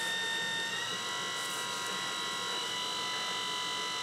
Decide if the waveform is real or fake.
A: real